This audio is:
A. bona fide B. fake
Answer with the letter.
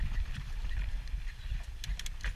A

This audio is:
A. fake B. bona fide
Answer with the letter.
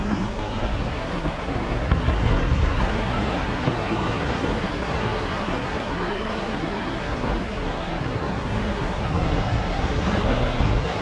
A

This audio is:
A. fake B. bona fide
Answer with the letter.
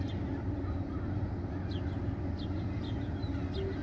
B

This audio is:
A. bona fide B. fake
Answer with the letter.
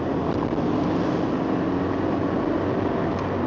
A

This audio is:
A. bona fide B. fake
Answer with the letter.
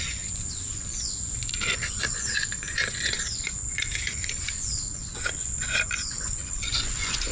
B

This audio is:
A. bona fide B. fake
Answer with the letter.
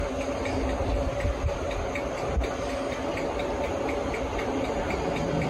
A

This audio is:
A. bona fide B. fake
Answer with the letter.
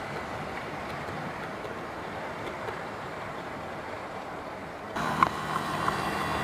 B